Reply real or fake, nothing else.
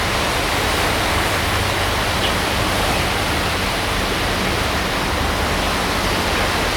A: real